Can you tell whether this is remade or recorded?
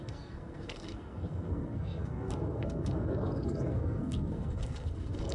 remade